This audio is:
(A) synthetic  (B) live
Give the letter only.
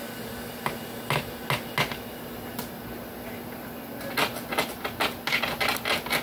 B